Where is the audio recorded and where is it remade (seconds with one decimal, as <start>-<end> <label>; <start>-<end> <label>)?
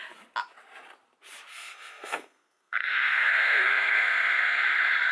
0.0-1.5 recorded; 1.5-4.6 remade; 4.6-5.1 recorded